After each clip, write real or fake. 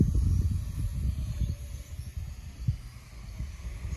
real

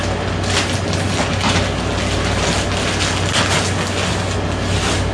real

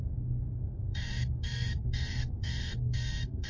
fake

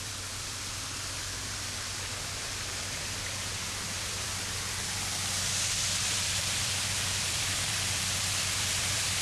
fake